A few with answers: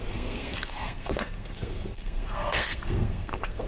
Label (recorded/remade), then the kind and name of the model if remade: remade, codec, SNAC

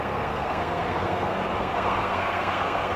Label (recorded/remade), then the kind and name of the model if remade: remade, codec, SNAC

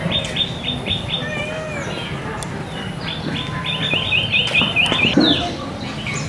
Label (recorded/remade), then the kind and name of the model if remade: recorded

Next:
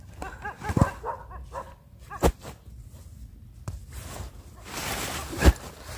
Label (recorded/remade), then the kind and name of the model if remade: recorded